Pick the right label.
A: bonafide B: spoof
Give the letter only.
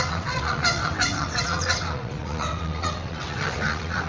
B